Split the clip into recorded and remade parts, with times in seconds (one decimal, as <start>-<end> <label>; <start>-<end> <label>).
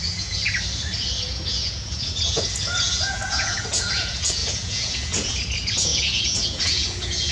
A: 0.0-0.4 remade; 0.4-1.3 recorded; 1.3-7.3 remade